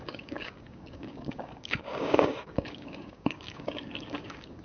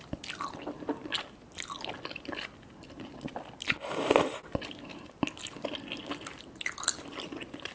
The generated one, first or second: first